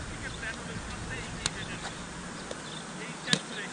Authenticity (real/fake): real